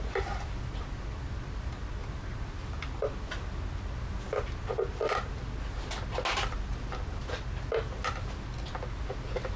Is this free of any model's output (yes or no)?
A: yes